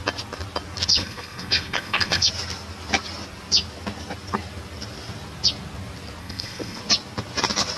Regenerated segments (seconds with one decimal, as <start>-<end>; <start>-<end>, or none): 0.9-2.3; 6.2-6.8